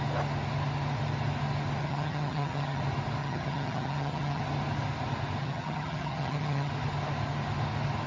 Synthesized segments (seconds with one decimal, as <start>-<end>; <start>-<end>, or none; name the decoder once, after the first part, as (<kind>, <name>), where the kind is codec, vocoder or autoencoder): 1.8-2.8 (vocoder, HiFi-GAN); 3.2-4.4; 5.4-6.7